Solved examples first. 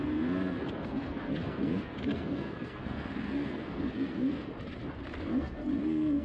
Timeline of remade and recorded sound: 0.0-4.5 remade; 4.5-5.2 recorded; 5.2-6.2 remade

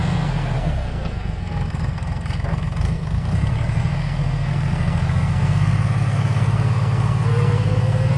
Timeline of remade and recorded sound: 0.0-8.2 remade

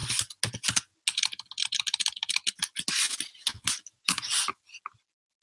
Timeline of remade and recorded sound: 0.0-5.4 recorded

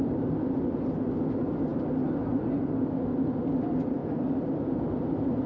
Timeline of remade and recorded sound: 0.0-5.5 recorded

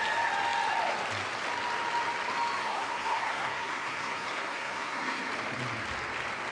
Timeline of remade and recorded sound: 0.0-2.6 recorded; 2.6-5.3 remade; 5.3-6.5 recorded

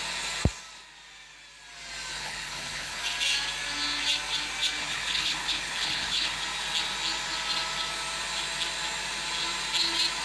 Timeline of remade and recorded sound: 0.0-2.1 recorded; 2.1-3.0 remade; 3.0-4.8 recorded; 4.8-6.4 remade; 6.4-10.2 recorded

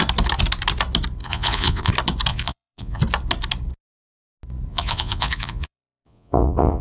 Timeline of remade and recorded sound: 0.0-1.2 recorded; 1.2-1.9 remade; 1.9-2.3 recorded; 2.3-3.0 remade; 3.0-4.7 recorded; 4.7-6.8 remade

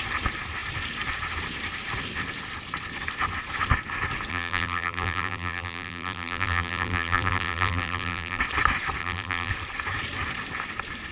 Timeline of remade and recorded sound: 0.0-4.3 recorded; 4.3-8.4 remade; 8.4-9.0 recorded; 9.0-9.5 remade; 9.5-11.1 recorded